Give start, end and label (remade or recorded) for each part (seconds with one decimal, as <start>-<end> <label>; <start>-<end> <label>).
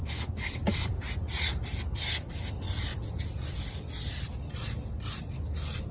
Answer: 0.0-2.5 recorded; 2.5-2.9 remade; 2.9-5.2 recorded; 5.2-5.9 remade